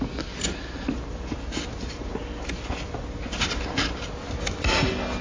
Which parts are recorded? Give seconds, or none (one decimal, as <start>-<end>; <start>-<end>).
0.0-5.2